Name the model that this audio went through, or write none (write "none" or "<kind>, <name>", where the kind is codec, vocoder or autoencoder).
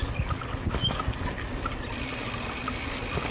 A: none